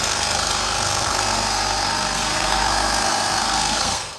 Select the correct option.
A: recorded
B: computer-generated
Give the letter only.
B